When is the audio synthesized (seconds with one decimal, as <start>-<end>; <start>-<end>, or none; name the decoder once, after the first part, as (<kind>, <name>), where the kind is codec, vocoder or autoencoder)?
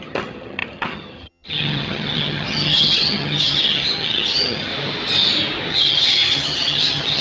0.0-4.7 (vocoder, HiFi-GAN); 5.7-7.2